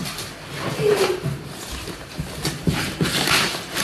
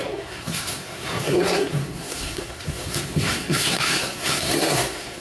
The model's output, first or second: second